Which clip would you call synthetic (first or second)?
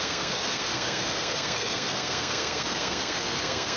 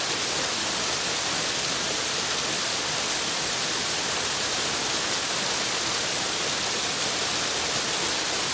first